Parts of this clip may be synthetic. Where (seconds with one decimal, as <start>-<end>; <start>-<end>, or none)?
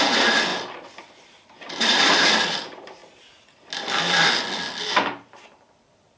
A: 0.0-3.0; 4.8-6.2